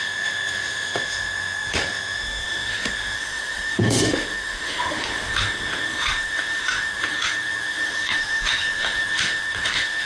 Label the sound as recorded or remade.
remade